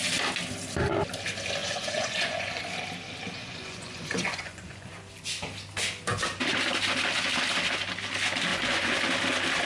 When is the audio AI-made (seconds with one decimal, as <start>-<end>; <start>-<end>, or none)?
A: 1.6-2.6; 3.4-4.9; 8.5-9.0

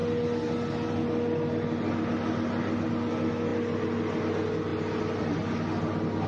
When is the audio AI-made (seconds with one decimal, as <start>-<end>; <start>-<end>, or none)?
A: none